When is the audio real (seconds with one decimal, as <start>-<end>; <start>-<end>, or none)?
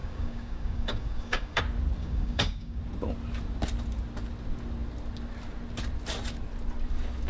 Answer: 1.6-2.0; 2.8-7.3